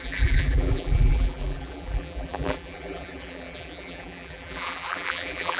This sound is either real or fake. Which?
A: fake